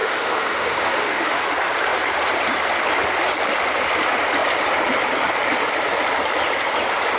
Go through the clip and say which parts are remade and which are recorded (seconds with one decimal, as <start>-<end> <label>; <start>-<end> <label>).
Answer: 0.0-1.4 remade; 1.4-7.2 recorded